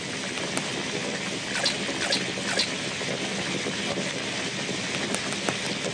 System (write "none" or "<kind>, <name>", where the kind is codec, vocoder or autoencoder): none